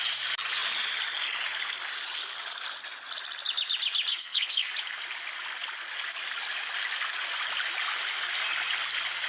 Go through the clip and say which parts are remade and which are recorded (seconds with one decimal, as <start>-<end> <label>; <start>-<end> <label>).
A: 0.0-4.1 recorded; 4.1-4.7 remade; 4.7-9.3 recorded